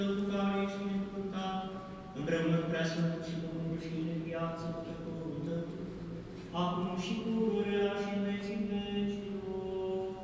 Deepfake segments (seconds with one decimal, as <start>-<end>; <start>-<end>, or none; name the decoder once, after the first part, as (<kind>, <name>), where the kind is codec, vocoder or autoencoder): none